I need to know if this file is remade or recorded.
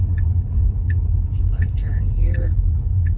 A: remade